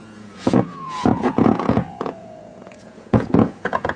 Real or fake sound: fake